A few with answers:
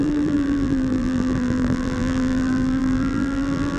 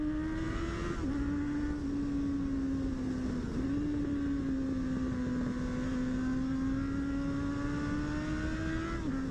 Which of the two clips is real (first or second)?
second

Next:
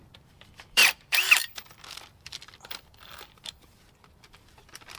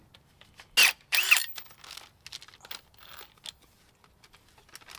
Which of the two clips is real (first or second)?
second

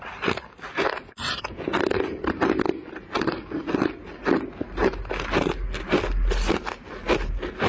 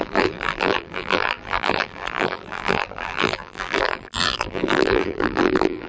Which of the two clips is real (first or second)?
first